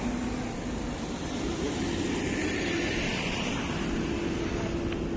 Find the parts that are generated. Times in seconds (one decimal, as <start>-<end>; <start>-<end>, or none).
1.2-1.9; 2.4-3.5